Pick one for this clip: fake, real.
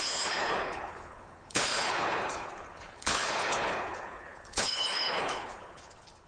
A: fake